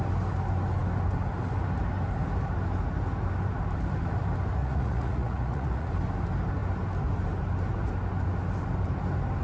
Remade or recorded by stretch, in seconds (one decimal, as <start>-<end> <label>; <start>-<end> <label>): 0.0-4.6 recorded; 4.6-5.9 remade; 5.9-9.4 recorded